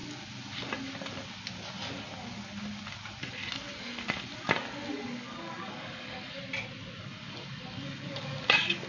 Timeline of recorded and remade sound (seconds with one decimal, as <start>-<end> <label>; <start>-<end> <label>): 0.0-4.9 recorded; 4.9-6.4 remade; 6.4-7.0 recorded; 7.0-8.9 remade